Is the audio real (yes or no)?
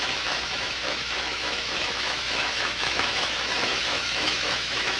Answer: no